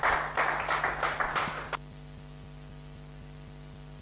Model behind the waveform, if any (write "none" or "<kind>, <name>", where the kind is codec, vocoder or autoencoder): vocoder, BigVGAN v2